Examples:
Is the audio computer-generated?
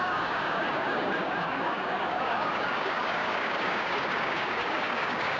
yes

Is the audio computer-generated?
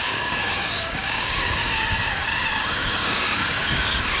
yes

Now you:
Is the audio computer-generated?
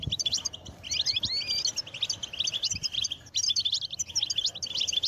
no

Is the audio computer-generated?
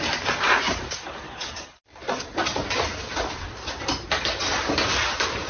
no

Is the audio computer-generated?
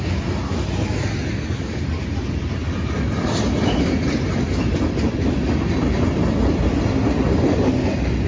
no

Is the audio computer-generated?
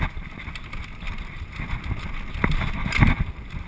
no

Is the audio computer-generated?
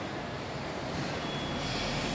no